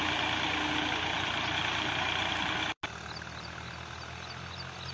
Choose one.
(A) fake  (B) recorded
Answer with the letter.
B